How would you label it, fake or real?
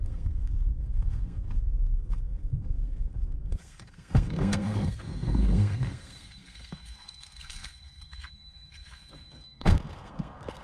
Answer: fake